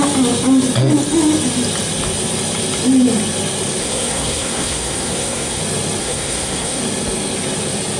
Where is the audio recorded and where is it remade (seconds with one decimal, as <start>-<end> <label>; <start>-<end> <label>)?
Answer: 0.0-3.8 recorded; 3.8-5.6 remade; 5.6-6.0 recorded; 6.0-6.8 remade; 6.8-8.0 recorded